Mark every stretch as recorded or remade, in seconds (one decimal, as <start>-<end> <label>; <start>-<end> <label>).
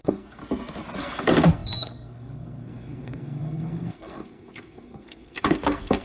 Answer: 0.0-0.4 remade; 0.4-1.0 recorded; 1.0-6.0 remade